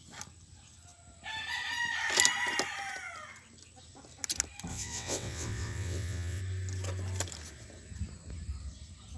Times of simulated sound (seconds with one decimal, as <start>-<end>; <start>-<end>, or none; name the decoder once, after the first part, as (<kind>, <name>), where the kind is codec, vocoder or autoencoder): 4.7-6.4 (vocoder, WaveNeXt)